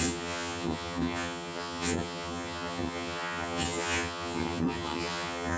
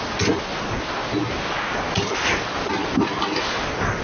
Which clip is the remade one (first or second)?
first